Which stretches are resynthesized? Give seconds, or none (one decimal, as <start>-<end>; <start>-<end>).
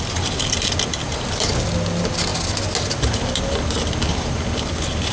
none